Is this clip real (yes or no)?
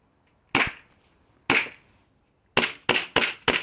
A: yes